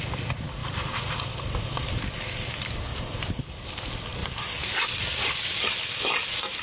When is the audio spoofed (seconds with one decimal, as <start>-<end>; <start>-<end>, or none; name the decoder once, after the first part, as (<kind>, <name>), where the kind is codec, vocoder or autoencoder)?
0.6-2.0 (vocoder, BigVGAN v2); 2.9-3.6; 4.2-5.6